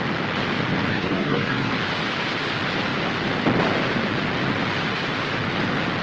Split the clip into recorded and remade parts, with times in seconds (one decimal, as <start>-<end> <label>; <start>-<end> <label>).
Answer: 0.0-0.9 recorded; 0.9-1.7 remade; 1.7-6.0 recorded